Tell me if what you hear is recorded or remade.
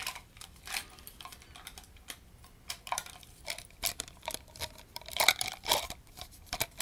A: remade